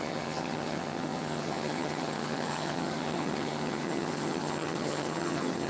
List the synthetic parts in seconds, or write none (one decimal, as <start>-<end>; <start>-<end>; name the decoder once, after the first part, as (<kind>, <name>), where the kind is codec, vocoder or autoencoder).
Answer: 0.0-5.7 (vocoder, HiFi-GAN)